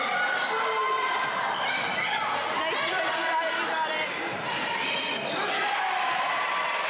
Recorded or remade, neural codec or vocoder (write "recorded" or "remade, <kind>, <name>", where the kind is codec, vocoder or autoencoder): recorded